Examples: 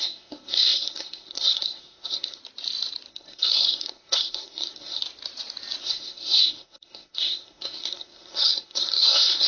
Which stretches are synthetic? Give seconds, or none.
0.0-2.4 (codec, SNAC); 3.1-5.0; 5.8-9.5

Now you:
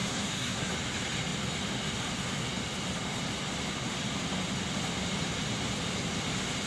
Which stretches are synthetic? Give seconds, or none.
0.0-0.7 (codec, SNAC)

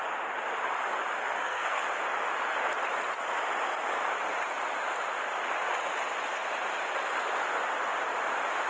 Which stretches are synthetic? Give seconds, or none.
1.2-1.8 (codec, SNAC)